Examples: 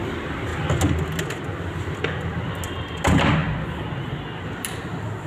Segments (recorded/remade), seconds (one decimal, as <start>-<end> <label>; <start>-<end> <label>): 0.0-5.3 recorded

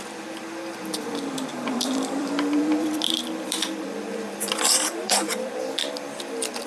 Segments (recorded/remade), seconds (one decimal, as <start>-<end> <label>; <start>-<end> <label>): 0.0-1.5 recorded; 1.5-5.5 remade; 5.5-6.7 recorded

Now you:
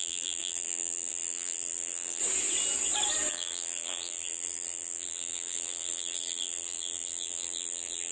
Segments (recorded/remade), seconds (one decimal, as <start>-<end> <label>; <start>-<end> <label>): 0.0-2.2 remade; 2.2-3.3 recorded; 3.3-8.1 remade

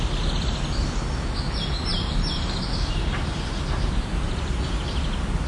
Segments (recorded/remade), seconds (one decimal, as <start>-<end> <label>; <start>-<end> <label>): 0.0-1.9 recorded; 1.9-5.0 remade; 5.0-5.5 recorded

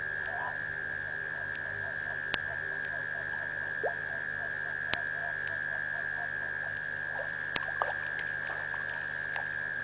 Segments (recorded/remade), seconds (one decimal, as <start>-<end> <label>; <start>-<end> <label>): 0.0-9.8 remade